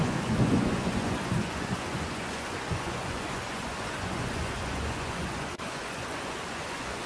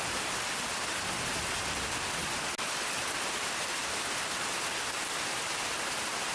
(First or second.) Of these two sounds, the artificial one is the first